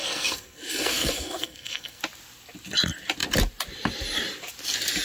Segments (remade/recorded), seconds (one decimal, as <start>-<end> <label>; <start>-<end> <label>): 0.0-2.0 remade; 2.0-5.0 recorded